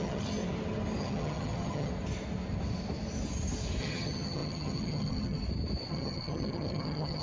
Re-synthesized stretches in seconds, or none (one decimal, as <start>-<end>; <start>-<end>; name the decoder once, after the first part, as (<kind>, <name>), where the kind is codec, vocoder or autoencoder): 0.0-0.4 (vocoder, HiFi-GAN); 1.0-1.9; 3.8-5.4; 5.9-7.2